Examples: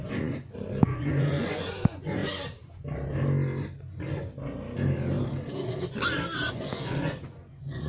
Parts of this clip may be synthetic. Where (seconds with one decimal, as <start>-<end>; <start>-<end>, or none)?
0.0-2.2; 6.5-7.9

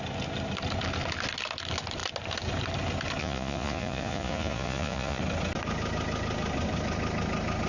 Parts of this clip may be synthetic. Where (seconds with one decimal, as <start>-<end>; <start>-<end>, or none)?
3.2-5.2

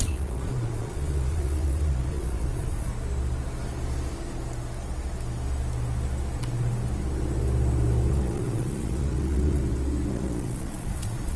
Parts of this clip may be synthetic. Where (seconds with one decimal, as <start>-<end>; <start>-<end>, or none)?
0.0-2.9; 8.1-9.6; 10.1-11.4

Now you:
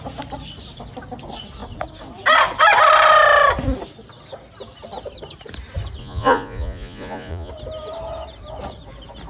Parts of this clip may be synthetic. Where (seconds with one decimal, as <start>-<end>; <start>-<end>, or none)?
6.0-7.5